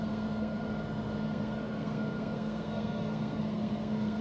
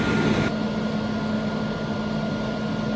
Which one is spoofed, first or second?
first